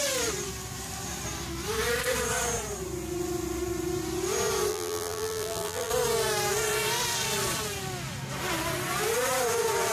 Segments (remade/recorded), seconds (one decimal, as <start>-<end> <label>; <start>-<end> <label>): 0.0-4.7 recorded; 4.7-5.9 remade; 5.9-9.9 recorded